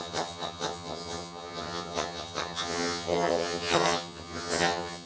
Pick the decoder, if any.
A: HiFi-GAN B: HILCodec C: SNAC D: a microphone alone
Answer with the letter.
A